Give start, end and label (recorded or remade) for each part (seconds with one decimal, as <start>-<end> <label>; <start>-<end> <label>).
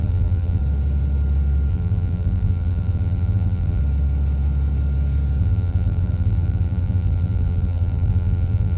0.0-0.6 remade; 0.6-1.7 recorded; 1.7-3.8 remade; 3.8-5.4 recorded; 5.4-8.8 remade